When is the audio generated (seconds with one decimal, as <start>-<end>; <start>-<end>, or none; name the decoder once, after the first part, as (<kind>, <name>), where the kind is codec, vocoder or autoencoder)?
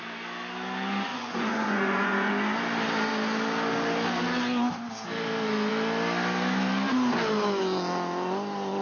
1.1-2.3 (vocoder, Vocos)